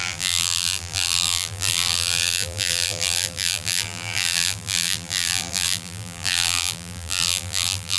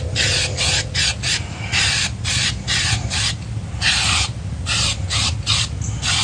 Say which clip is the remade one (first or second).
first